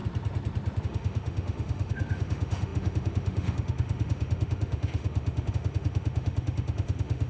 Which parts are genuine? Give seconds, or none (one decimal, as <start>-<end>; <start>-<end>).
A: 0.0-0.8